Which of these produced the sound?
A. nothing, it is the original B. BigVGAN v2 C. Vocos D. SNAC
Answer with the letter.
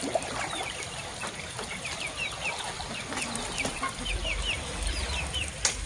A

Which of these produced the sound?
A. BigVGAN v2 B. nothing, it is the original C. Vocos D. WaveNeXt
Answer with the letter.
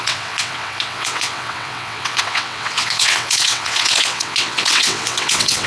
D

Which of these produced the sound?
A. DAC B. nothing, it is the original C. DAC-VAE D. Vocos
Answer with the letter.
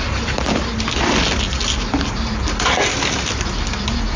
B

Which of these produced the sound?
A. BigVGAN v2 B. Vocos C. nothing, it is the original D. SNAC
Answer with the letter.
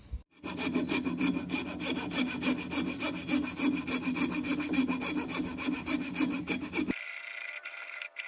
C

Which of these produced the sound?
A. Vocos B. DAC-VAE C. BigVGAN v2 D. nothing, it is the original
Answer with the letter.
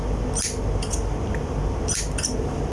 D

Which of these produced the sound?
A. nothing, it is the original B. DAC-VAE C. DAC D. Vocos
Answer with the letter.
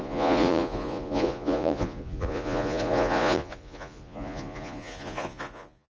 D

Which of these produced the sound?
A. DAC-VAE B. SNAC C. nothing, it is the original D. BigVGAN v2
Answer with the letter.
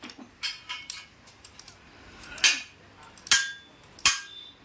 C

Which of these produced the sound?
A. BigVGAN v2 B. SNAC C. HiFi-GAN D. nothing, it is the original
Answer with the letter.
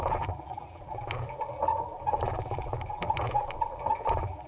A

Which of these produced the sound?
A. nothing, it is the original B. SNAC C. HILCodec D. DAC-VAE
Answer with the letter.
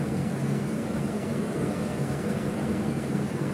B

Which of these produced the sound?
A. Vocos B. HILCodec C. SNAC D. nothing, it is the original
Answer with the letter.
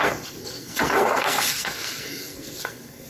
C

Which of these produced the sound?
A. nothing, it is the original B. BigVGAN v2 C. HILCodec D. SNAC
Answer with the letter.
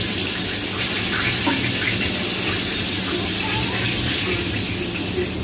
A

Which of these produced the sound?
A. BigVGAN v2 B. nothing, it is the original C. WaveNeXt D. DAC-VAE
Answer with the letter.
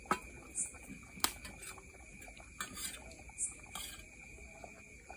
B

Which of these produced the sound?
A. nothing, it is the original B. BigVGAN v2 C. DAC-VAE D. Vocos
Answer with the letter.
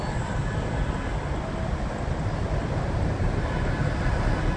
A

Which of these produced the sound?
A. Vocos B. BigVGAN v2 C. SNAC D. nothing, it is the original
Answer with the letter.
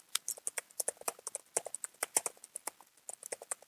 D